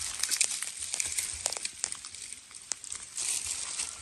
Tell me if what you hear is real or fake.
real